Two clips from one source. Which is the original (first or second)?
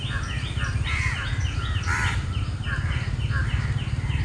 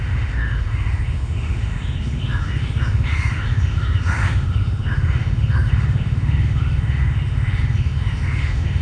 first